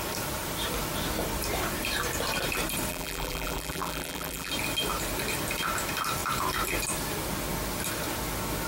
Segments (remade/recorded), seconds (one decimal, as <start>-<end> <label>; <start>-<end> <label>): 0.0-2.9 recorded; 2.9-4.5 remade; 4.5-8.7 recorded